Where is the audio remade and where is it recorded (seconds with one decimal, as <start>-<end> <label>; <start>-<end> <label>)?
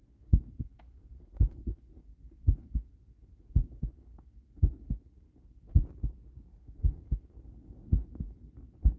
0.0-5.8 remade; 5.8-6.5 recorded; 6.5-9.0 remade